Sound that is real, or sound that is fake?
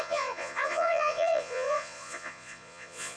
fake